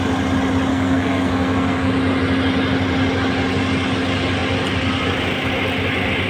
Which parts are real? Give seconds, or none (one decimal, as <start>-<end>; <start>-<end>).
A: 0.0-0.7; 1.9-6.3